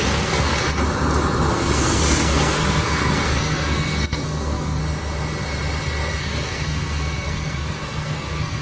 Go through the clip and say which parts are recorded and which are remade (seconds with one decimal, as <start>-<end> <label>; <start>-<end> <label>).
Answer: 0.0-0.5 remade; 0.5-1.5 recorded; 1.5-4.8 remade; 4.8-6.2 recorded; 6.2-8.6 remade